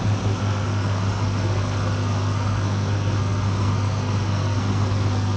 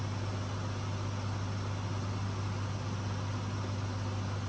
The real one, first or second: second